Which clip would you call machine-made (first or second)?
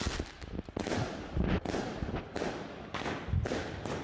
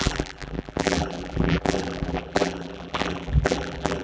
second